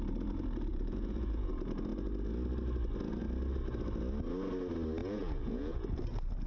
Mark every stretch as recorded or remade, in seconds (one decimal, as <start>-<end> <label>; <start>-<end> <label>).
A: 0.0-0.7 recorded; 0.7-1.5 remade; 1.5-5.0 recorded; 5.0-6.0 remade; 6.0-6.5 recorded